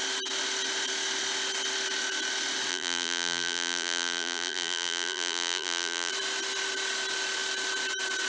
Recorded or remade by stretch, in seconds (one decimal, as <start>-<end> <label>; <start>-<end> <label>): 0.0-2.7 recorded; 2.7-6.1 remade; 6.1-8.3 recorded